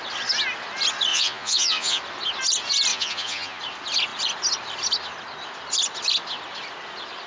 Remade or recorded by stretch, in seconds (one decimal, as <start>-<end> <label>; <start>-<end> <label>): 0.0-1.1 recorded; 1.1-2.0 remade; 2.0-2.9 recorded; 2.9-3.6 remade; 3.6-7.3 recorded